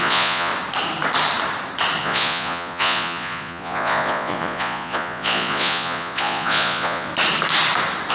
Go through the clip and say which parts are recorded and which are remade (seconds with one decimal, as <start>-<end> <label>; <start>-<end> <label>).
0.0-0.5 remade; 0.5-2.0 recorded; 2.0-7.1 remade; 7.1-8.1 recorded